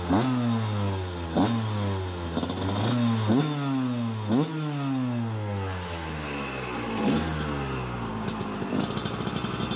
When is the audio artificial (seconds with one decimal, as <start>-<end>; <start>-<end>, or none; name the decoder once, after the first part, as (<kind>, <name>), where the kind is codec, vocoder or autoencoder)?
none